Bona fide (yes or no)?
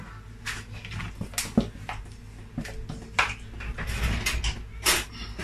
yes